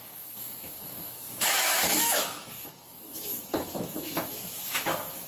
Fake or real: fake